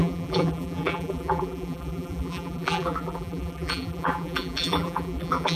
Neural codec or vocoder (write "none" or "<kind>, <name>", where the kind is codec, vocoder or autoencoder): vocoder, BigVGAN v2